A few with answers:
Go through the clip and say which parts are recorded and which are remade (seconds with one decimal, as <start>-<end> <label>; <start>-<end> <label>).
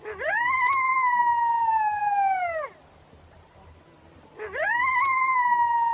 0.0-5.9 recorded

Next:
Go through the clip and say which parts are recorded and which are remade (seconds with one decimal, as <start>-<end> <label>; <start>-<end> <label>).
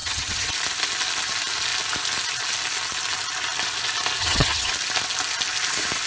0.0-0.5 remade; 0.5-4.2 recorded; 4.2-4.7 remade; 4.7-6.1 recorded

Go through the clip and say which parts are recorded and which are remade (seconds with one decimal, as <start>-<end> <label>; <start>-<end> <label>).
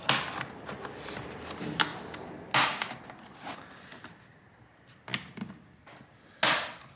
0.0-7.0 recorded